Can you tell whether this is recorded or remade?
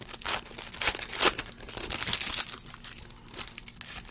recorded